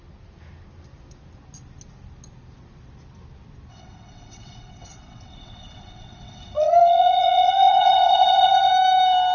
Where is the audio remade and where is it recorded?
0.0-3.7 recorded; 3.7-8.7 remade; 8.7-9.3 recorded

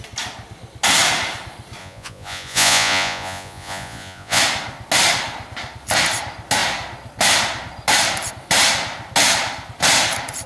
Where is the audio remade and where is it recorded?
0.0-1.8 recorded; 1.8-4.4 remade; 4.4-10.5 recorded

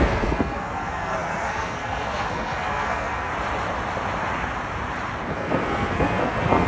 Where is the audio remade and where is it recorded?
0.0-3.3 remade; 3.3-5.3 recorded; 5.3-6.7 remade

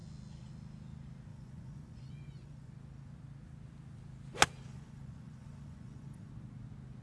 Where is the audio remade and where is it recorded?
0.0-1.3 recorded; 1.3-2.7 remade; 2.7-4.7 recorded; 4.7-6.3 remade; 6.3-7.0 recorded

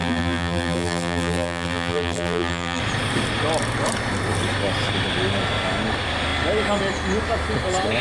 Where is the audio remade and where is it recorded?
0.0-2.8 remade; 2.8-8.0 recorded

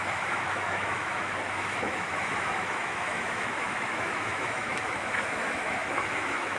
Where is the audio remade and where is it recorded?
0.0-6.6 remade